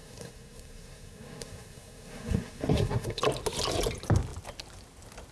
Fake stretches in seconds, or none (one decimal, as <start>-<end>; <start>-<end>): 0.0-3.2